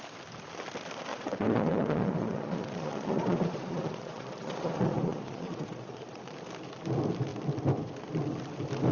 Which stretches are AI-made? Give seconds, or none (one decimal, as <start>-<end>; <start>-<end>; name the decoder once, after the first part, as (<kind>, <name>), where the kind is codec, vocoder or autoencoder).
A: 1.1-6.2 (vocoder, Vocos)